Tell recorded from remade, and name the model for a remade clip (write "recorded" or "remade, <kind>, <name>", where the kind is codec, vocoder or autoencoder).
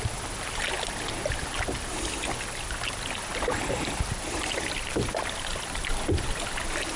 recorded